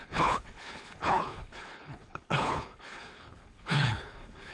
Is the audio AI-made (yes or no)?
yes